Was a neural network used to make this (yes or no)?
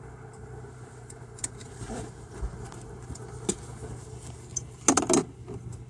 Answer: no